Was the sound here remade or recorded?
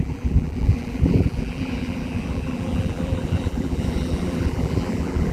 remade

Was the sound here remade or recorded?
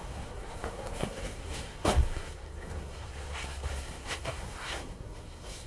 remade